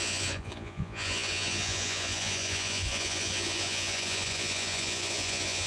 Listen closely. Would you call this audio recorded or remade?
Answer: remade